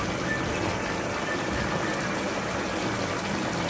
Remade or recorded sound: recorded